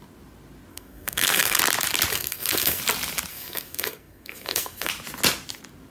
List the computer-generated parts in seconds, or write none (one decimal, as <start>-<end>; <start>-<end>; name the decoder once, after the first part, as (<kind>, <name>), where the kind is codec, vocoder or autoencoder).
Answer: 0.7-1.6 (codec, SNAC); 2.1-2.8; 3.3-4.9